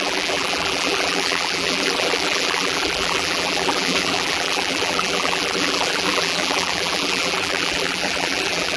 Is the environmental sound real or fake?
fake